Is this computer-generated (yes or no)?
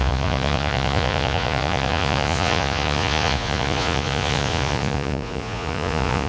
yes